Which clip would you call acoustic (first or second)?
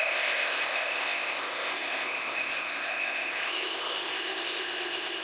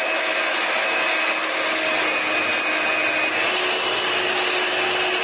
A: second